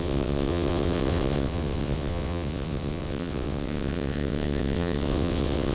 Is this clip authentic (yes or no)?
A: no